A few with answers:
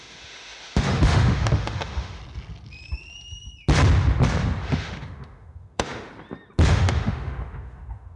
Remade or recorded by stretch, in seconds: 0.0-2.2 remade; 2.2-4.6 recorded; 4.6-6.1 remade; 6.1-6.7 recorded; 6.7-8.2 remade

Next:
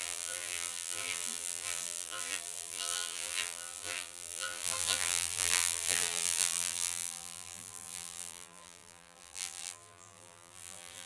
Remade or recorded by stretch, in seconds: 0.0-11.1 remade

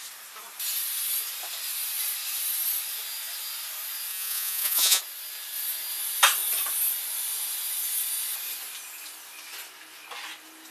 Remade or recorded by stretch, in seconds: 0.0-4.1 recorded; 4.1-5.0 remade; 5.0-10.7 recorded